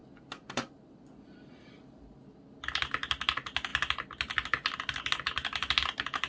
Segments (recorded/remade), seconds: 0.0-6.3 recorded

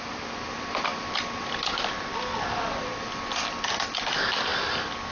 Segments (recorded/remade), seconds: 0.0-5.1 recorded

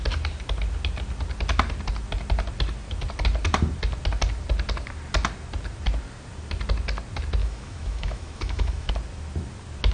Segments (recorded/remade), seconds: 0.0-7.4 recorded; 7.4-8.9 remade; 8.9-9.9 recorded

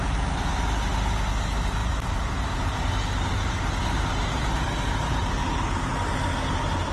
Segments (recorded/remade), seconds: 0.0-1.8 recorded; 1.8-5.6 remade; 5.6-6.9 recorded

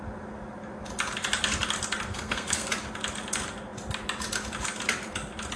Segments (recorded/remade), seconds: 0.0-2.1 recorded; 2.1-2.7 remade; 2.7-5.6 recorded

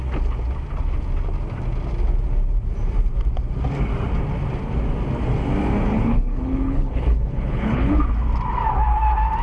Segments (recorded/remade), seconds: 0.0-5.9 recorded; 5.9-8.0 remade; 8.0-9.4 recorded

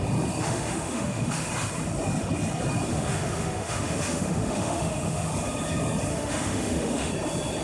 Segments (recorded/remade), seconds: 0.0-0.4 recorded; 0.4-1.5 remade; 1.5-2.9 recorded; 2.9-5.3 remade; 5.3-6.1 recorded; 6.1-7.1 remade; 7.1-7.6 recorded